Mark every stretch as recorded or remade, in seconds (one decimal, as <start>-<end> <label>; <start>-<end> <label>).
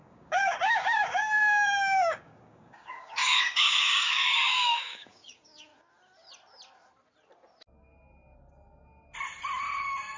0.0-5.7 remade; 5.7-10.2 recorded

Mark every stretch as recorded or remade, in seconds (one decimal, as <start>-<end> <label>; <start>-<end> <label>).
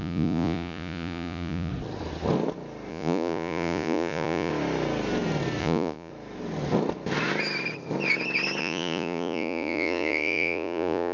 0.0-1.7 remade; 1.7-2.9 recorded; 2.9-4.5 remade; 4.5-5.6 recorded; 5.6-6.1 remade; 6.1-8.6 recorded; 8.6-11.1 remade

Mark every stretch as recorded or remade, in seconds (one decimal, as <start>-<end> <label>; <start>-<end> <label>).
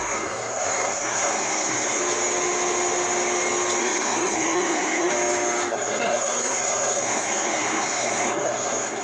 0.0-2.0 remade; 2.0-3.8 recorded; 3.8-5.1 remade; 5.1-5.7 recorded; 5.7-9.0 remade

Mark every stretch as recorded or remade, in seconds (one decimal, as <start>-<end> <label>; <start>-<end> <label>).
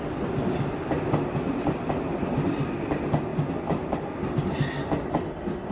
0.0-5.7 recorded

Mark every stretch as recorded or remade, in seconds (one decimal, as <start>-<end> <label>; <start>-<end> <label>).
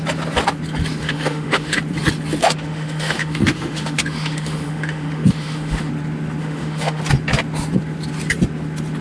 0.0-1.0 recorded; 1.0-1.8 remade; 1.8-2.4 recorded; 2.4-5.9 remade; 5.9-6.4 recorded; 6.4-7.0 remade; 7.0-9.0 recorded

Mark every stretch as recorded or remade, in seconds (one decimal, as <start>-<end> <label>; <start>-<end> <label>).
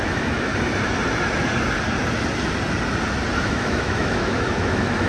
0.0-0.5 remade; 0.5-3.5 recorded; 3.5-5.1 remade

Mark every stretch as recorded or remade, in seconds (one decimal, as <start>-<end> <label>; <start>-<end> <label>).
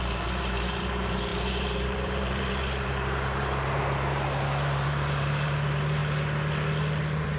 0.0-6.0 remade; 6.0-7.0 recorded; 7.0-7.4 remade